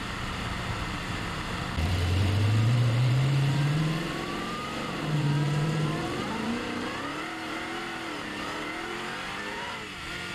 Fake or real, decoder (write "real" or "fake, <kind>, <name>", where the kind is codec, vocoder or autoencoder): fake, vocoder, BigVGAN v2